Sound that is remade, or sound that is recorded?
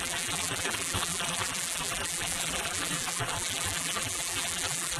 remade